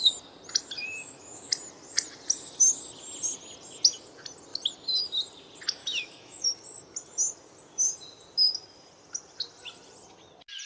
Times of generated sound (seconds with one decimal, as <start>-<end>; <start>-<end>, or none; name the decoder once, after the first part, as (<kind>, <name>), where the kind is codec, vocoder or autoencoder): 0.8-1.5 (autoencoder, DAC-VAE); 5.8-6.5